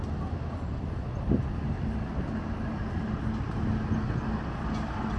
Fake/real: real